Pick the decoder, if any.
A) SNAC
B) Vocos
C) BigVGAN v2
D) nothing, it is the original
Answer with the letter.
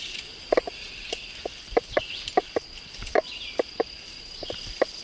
D